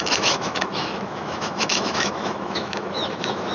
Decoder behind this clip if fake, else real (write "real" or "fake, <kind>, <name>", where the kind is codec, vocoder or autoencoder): fake, autoencoder, DAC-VAE